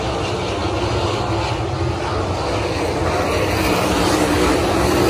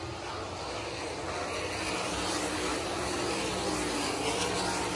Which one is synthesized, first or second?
first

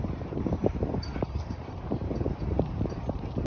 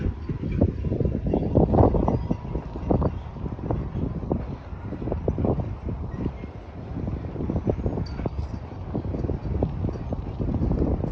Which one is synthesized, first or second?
first